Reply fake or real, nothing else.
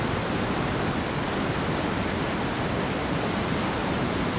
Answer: real